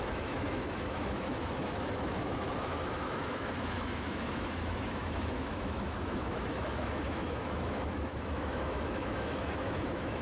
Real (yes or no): no